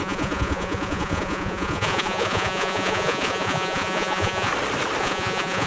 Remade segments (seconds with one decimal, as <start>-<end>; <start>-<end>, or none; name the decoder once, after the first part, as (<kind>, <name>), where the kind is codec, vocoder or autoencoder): 0.0-4.5 (vocoder, Vocos); 5.0-5.7